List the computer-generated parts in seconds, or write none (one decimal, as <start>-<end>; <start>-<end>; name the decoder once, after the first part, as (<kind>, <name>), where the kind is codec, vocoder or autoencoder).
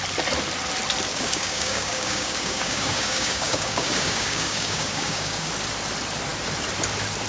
1.1-5.5 (codec, DAC)